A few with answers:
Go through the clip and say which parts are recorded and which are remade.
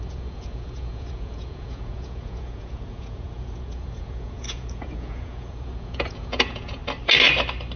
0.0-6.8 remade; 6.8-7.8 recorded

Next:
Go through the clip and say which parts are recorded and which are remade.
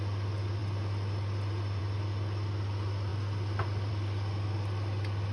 0.0-5.3 recorded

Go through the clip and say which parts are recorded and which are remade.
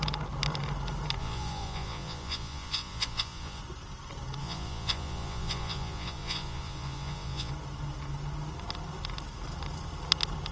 0.0-1.2 recorded; 1.2-3.6 remade; 3.6-4.4 recorded; 4.4-7.5 remade; 7.5-10.5 recorded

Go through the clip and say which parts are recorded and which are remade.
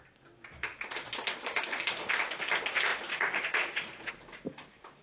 0.0-2.9 recorded; 2.9-4.1 remade; 4.1-5.0 recorded